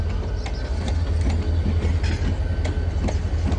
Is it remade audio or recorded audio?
recorded